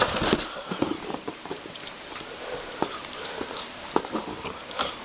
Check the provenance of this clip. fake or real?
fake